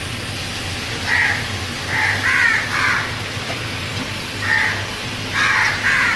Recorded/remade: recorded